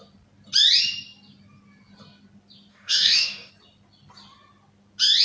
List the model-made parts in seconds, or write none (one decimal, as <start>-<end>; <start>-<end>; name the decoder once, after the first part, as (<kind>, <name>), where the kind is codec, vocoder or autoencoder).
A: 2.7-3.5 (codec, DAC)